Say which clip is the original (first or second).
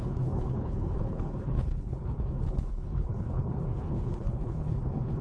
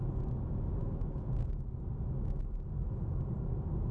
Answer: second